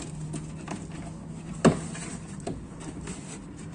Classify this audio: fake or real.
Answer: real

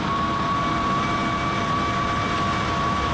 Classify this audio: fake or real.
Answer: real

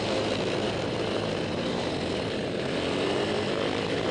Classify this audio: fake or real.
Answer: real